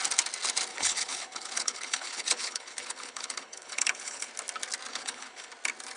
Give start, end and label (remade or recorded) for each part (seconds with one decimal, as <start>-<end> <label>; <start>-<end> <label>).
0.0-0.7 recorded; 0.7-4.3 remade; 4.3-4.9 recorded; 4.9-5.5 remade; 5.5-6.0 recorded